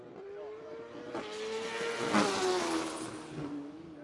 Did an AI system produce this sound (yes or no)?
no